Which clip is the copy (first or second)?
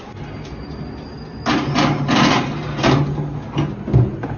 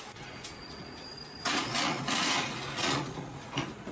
second